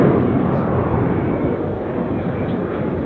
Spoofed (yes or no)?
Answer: no